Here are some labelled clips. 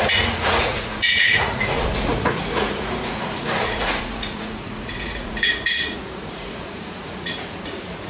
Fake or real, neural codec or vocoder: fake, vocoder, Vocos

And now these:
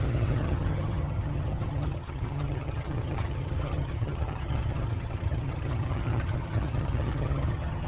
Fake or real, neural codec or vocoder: fake, vocoder, HiFi-GAN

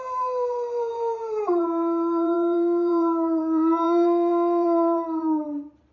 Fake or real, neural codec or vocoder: fake, vocoder, BigVGAN v2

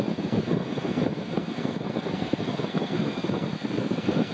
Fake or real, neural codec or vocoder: fake, codec, SNAC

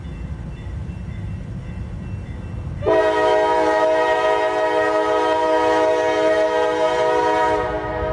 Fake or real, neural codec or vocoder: real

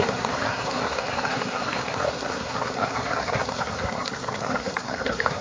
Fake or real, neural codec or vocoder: fake, codec, SNAC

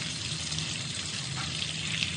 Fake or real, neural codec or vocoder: real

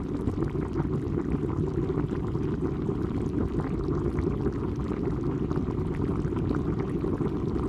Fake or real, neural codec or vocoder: real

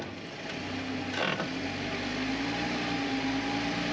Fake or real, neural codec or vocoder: real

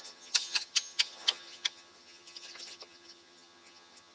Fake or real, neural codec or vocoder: fake, vocoder, HiFi-GAN